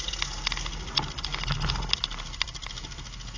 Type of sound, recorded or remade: recorded